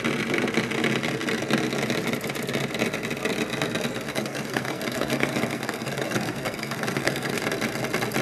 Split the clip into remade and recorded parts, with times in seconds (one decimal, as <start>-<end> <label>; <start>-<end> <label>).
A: 0.0-4.1 recorded; 4.1-7.3 remade; 7.3-8.2 recorded